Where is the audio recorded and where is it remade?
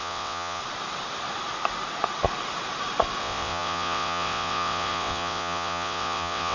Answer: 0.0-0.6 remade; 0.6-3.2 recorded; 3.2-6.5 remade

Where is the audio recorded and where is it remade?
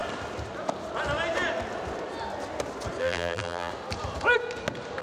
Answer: 0.0-3.0 recorded; 3.0-3.7 remade; 3.7-5.0 recorded